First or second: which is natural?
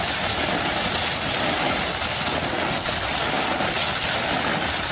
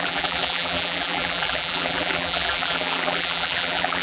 first